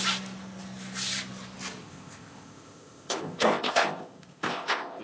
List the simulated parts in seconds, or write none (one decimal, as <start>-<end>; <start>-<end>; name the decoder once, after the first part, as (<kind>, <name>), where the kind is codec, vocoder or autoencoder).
1.8-5.0 (codec, ZipCodec)